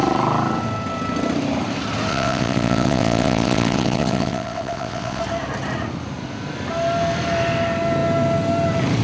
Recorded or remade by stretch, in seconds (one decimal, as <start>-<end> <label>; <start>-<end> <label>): 0.0-2.1 recorded; 2.1-5.2 remade; 5.2-9.0 recorded